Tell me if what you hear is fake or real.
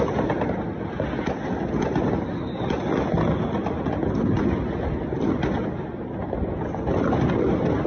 real